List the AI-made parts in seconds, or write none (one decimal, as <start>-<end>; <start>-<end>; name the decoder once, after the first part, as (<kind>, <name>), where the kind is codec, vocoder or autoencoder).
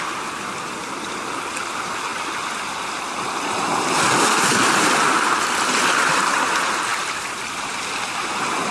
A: none